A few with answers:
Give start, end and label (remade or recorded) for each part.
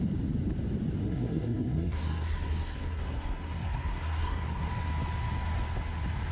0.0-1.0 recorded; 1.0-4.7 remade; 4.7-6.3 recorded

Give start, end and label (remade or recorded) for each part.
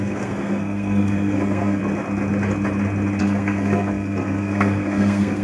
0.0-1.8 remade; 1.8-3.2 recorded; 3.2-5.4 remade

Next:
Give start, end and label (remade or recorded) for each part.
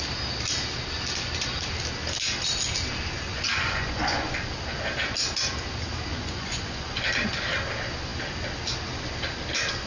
0.0-3.3 recorded; 3.3-4.3 remade; 4.3-6.1 recorded; 6.1-7.0 remade; 7.0-9.9 recorded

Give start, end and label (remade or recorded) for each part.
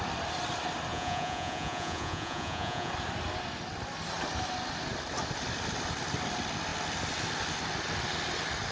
0.0-0.9 recorded; 0.9-2.9 remade; 2.9-8.7 recorded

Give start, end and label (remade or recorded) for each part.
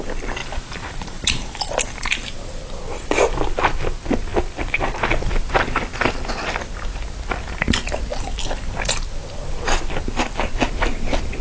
0.0-0.4 recorded; 0.4-2.6 remade; 2.6-11.4 recorded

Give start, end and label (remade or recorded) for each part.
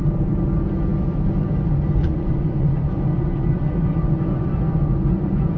0.0-2.0 recorded; 2.0-5.6 remade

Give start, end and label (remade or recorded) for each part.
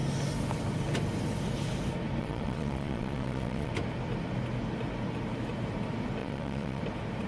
0.0-2.2 recorded; 2.2-3.7 remade; 3.7-6.2 recorded; 6.2-6.8 remade; 6.8-7.3 recorded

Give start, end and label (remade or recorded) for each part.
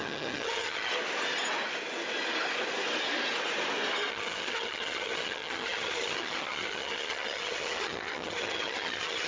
0.0-0.9 remade; 0.9-4.1 recorded; 4.1-9.3 remade